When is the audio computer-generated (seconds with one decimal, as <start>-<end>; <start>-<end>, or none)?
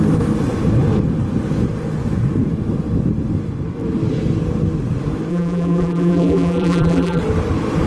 5.3-7.2